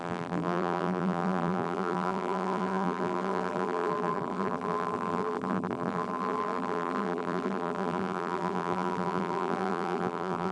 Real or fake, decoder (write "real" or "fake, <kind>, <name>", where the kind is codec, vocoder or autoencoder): fake, vocoder, BigVGAN v2